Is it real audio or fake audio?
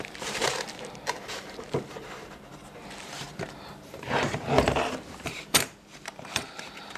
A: fake